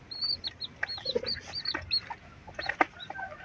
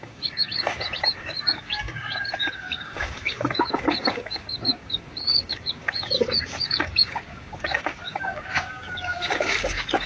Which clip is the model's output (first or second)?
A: second